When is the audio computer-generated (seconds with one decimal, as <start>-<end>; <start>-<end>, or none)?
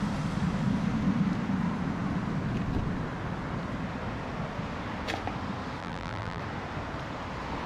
5.8-6.4